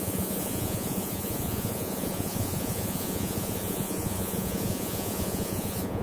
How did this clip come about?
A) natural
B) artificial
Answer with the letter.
B